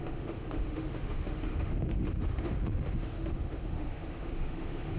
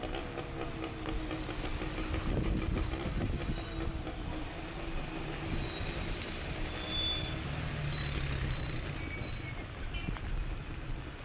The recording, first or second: second